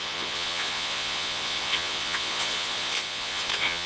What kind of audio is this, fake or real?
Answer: fake